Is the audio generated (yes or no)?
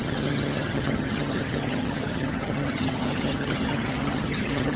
yes